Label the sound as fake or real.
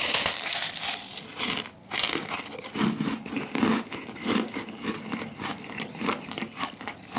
real